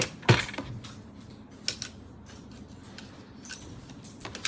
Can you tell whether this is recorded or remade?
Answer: recorded